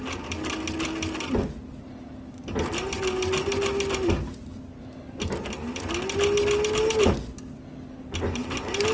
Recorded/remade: recorded